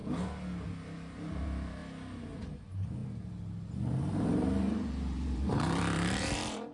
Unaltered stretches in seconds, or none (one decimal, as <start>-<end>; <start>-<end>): 0.0-1.1; 1.8-2.4; 3.0-3.7